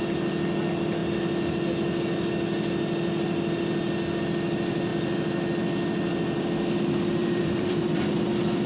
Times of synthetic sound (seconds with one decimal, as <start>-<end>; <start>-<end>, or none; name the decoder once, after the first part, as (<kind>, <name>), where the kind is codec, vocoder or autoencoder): 7.2-8.0 (vocoder, BigVGAN v2)